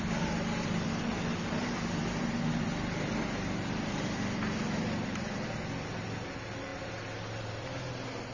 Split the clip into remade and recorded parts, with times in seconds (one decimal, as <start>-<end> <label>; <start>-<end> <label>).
0.0-8.3 recorded